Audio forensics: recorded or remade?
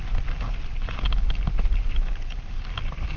recorded